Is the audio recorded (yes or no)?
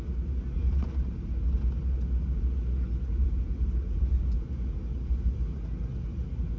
yes